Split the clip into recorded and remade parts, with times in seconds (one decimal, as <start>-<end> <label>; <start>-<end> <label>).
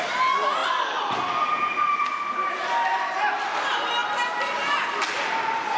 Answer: 0.0-5.8 recorded